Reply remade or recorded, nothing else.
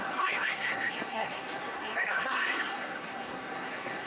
remade